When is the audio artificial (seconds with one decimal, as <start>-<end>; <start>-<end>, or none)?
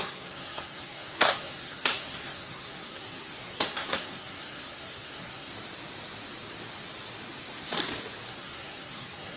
0.0-5.5; 8.3-9.4